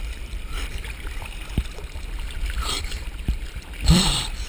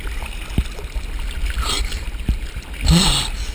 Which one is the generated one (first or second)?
first